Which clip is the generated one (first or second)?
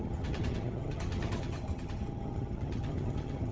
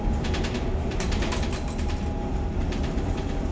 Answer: first